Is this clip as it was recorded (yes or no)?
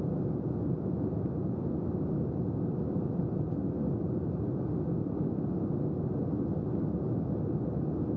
yes